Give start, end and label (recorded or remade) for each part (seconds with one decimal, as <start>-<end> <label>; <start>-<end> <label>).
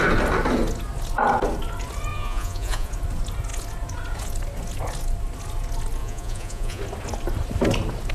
0.0-2.1 recorded; 2.1-2.9 remade; 2.9-6.0 recorded; 6.0-6.8 remade; 6.8-8.1 recorded